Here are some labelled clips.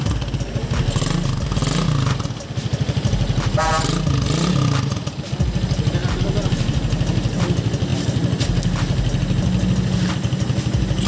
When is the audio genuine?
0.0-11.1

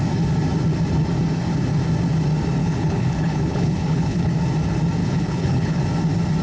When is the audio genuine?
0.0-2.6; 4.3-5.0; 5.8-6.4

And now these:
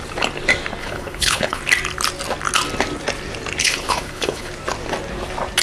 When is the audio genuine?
0.0-0.8; 1.6-3.6; 4.5-5.6

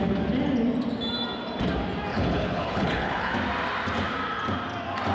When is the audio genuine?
0.0-2.1; 3.3-5.1

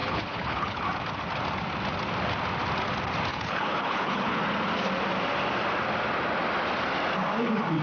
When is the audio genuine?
0.8-3.3; 4.4-7.8

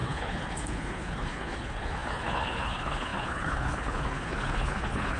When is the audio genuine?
none

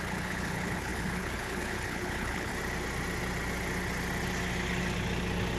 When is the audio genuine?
2.5-5.6